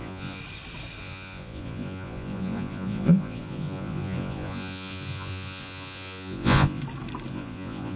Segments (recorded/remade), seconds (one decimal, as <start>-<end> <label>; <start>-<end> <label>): 0.0-0.4 remade; 0.4-1.0 recorded; 1.0-6.8 remade; 6.8-7.3 recorded; 7.3-8.0 remade